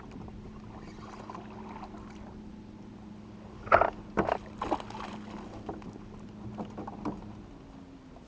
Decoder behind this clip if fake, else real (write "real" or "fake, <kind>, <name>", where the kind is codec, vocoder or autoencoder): real